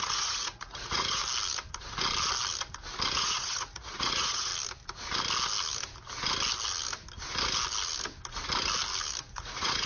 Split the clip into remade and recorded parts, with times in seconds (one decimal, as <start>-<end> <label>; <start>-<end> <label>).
0.0-1.2 remade; 1.2-3.2 recorded; 3.2-4.5 remade; 4.5-9.2 recorded; 9.2-9.9 remade